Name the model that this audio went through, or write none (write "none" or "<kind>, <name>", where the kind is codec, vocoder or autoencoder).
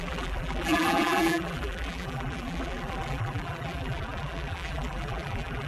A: vocoder, BigVGAN v2